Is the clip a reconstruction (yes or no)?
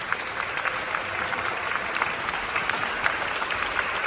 yes